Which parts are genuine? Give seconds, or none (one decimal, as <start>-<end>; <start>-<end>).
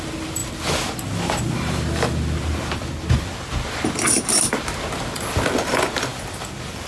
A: 0.0-6.9